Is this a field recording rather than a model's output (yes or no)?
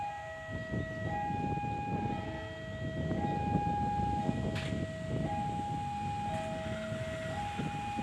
yes